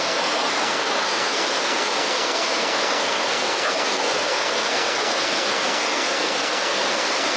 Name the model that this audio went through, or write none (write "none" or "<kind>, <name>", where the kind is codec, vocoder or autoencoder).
codec, SNAC